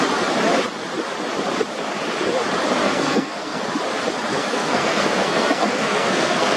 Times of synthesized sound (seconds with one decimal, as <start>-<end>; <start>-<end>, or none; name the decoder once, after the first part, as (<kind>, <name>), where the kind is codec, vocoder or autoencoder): 2.8-3.6 (codec, SNAC); 4.3-6.6